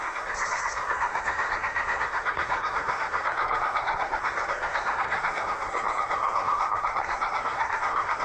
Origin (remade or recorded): remade